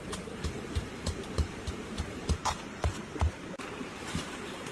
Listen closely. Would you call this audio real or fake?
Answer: fake